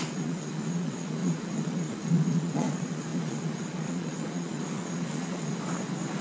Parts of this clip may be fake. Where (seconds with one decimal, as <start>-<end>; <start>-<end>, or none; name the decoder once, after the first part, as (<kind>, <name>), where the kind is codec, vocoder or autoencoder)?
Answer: 0.0-5.5 (vocoder, Vocos)